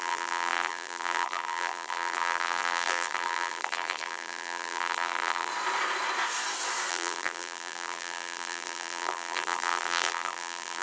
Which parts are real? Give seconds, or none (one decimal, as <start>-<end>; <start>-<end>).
5.5-6.9